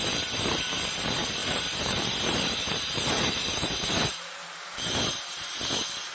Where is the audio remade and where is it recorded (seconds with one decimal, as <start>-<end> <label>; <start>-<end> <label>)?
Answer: 0.0-0.7 remade; 0.7-1.4 recorded; 1.4-5.1 remade; 5.1-6.1 recorded